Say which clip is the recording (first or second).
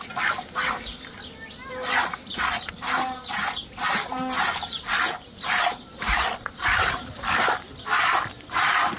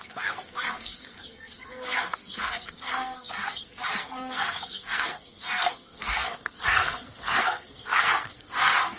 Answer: first